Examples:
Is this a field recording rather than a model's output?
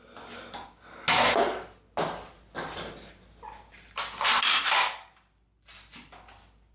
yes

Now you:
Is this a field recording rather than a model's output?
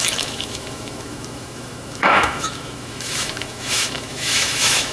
no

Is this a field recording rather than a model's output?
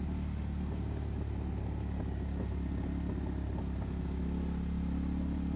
yes